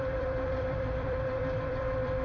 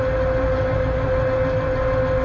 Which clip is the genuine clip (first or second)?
second